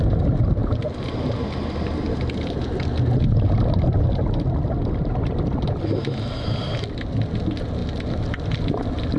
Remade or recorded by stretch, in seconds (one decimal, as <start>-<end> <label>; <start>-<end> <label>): 0.0-9.2 recorded